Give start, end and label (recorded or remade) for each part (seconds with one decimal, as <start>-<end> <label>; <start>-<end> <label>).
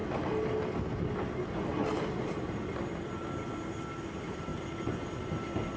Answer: 0.0-5.8 recorded